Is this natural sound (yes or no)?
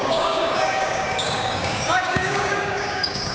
no